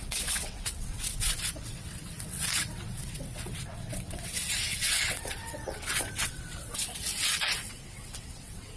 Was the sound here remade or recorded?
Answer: remade